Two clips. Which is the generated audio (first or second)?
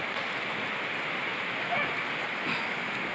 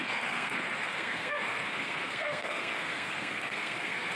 second